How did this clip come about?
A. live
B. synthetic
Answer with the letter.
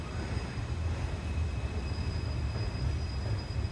A